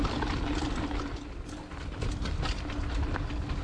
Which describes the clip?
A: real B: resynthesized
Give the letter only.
A